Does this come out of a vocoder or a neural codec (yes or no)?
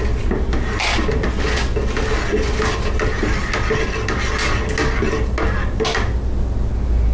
no